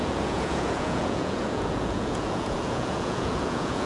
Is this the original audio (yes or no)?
no